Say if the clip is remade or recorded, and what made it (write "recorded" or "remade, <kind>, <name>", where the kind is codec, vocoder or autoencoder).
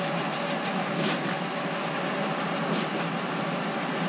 recorded